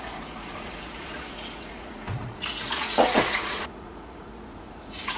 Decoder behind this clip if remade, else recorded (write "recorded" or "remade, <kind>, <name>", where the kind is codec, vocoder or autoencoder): remade, vocoder, Vocos